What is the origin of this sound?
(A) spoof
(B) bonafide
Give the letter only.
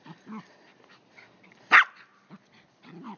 B